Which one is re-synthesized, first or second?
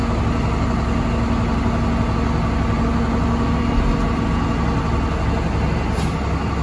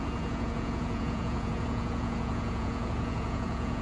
second